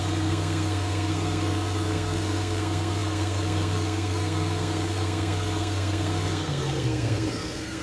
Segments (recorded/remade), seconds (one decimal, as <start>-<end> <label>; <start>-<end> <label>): 0.0-7.8 remade